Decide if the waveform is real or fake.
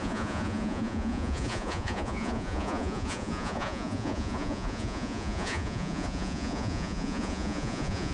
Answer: fake